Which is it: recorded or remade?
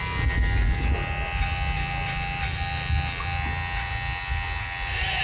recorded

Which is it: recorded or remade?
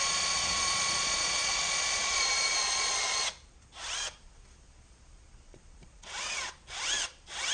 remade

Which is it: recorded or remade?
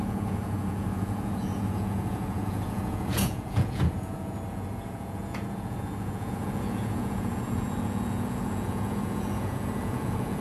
remade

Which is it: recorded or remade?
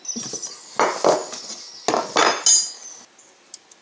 recorded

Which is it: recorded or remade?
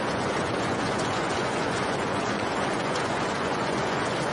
remade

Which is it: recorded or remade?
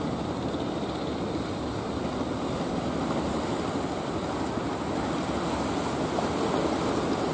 recorded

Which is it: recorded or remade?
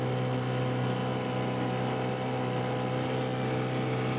recorded